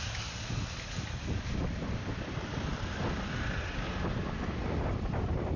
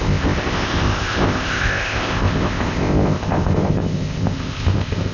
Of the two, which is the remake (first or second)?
second